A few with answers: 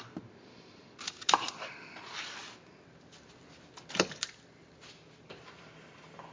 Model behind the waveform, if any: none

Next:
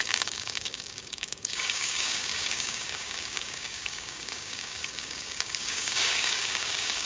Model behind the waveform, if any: codec, DAC